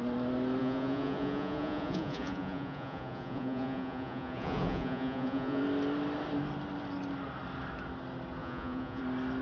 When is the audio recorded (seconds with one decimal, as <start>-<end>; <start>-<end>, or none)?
0.0-0.6; 5.6-8.4; 9.0-9.4